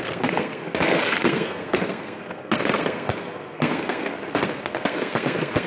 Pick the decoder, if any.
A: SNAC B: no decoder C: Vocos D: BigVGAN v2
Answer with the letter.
A